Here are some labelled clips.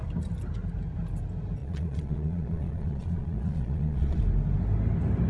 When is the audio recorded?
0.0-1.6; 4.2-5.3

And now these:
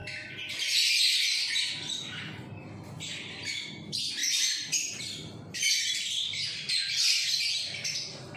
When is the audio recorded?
0.0-8.4

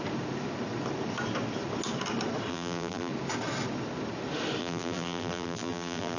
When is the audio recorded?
0.0-2.5; 3.1-4.6